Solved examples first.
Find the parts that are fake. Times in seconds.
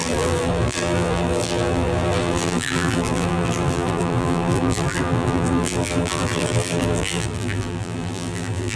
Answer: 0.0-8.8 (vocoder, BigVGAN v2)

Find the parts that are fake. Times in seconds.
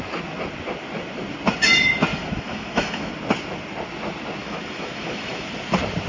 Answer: 2.1-3.1 (autoencoder, DAC-VAE); 4.4-5.5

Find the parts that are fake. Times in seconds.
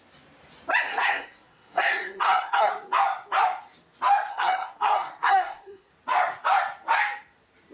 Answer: 0.9-2.7 (codec, SNAC); 4.3-5.9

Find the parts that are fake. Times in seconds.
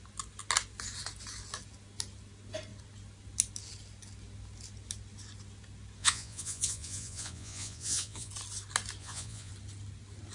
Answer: 6.0-8.3 (vocoder, Vocos); 9.0-9.5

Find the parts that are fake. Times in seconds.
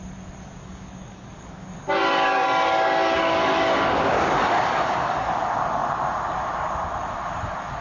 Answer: 0.6-5.3 (codec, DAC)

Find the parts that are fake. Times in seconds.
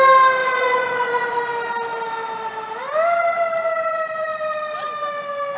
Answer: 0.4-1.4 (vocoder, Vocos)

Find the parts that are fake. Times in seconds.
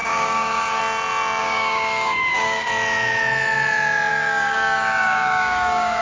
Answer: 0.0-0.8 (codec, DAC); 1.4-2.7; 4.1-6.0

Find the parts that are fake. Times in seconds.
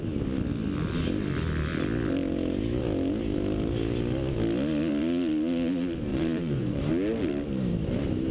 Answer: 6.1-6.8 (vocoder, Vocos)